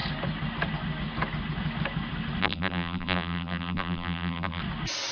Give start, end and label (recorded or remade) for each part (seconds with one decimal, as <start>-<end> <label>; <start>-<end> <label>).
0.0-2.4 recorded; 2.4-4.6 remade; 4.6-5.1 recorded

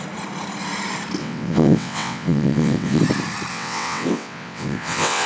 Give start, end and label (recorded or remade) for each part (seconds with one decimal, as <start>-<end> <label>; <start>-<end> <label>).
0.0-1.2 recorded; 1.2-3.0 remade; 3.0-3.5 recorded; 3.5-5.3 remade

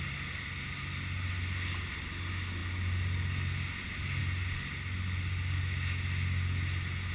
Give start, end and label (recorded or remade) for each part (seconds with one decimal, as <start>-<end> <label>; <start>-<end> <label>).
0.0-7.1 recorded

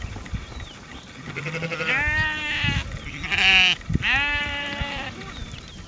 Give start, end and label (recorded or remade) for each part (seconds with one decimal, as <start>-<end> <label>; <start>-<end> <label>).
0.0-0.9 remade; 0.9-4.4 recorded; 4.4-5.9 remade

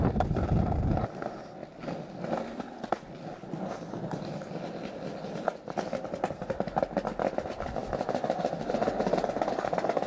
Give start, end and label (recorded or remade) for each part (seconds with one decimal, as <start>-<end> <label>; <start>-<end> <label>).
0.0-7.8 recorded; 7.8-8.5 remade; 8.5-10.1 recorded